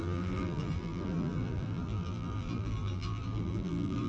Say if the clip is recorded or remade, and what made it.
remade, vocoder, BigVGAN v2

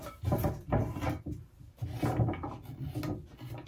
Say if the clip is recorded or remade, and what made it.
recorded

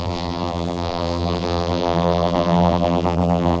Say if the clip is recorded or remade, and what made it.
remade, vocoder, BigVGAN v2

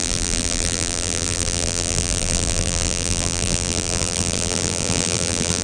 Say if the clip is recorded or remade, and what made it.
remade, vocoder, BigVGAN v2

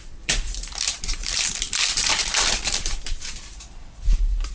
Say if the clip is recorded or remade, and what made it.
remade, vocoder, BigVGAN v2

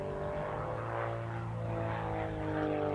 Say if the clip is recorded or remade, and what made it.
recorded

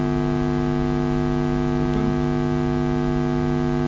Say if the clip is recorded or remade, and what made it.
recorded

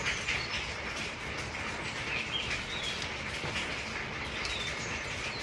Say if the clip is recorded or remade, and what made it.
recorded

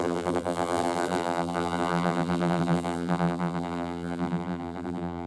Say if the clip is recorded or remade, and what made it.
remade, vocoder, BigVGAN v2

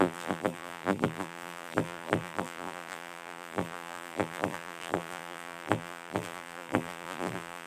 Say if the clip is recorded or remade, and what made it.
remade, vocoder, BigVGAN v2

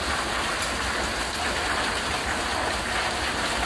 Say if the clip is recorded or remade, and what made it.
recorded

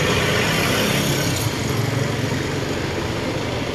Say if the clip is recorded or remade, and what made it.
recorded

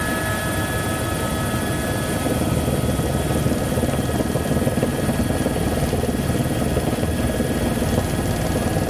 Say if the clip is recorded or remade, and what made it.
recorded